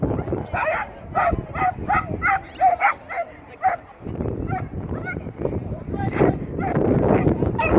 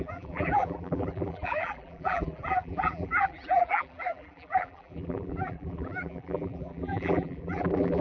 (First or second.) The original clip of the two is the first